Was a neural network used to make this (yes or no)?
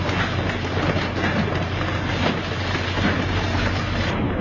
no